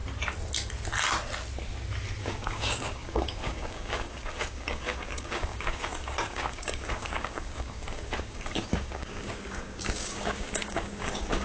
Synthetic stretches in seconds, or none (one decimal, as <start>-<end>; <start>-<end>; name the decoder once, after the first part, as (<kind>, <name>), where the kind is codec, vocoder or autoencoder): 2.2-11.4 (codec, DAC)